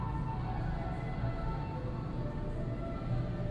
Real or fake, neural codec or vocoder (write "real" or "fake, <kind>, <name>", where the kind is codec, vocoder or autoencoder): real